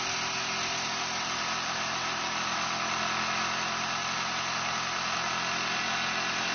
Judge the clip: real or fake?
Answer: real